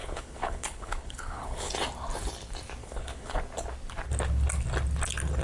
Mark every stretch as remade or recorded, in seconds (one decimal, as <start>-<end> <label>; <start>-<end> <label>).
0.0-1.7 remade; 1.7-2.8 recorded; 2.8-3.4 remade; 3.4-5.4 recorded